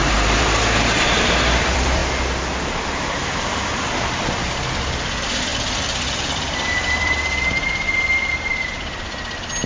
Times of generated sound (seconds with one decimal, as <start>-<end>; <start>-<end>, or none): 0.0-2.0; 4.0-9.7